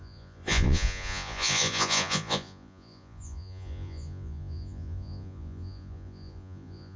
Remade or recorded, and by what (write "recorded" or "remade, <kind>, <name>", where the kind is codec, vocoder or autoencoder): remade, vocoder, Vocos